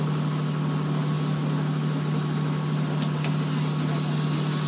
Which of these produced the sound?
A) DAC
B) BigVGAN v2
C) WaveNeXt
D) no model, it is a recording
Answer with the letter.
D